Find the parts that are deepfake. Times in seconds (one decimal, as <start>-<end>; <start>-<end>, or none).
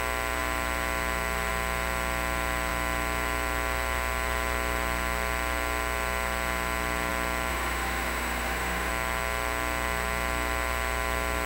7.5-8.9